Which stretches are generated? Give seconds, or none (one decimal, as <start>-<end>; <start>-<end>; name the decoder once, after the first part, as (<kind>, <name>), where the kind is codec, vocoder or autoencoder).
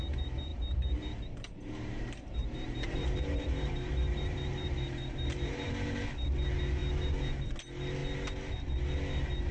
0.5-5.7 (vocoder, BigVGAN v2)